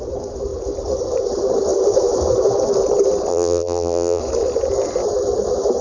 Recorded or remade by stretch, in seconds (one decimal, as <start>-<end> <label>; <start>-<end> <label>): 0.0-3.3 recorded; 3.3-4.2 remade; 4.2-5.8 recorded